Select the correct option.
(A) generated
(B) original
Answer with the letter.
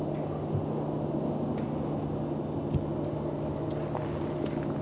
B